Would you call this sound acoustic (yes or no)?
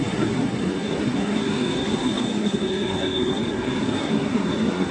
no